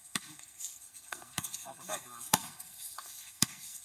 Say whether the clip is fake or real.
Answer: fake